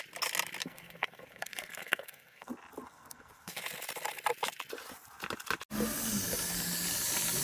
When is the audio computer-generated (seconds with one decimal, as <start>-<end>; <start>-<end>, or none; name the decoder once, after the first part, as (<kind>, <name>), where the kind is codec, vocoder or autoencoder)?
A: 0.6-2.5 (codec, SNAC); 2.9-3.6